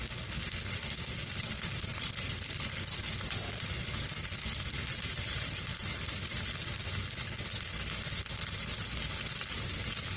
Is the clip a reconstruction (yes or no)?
no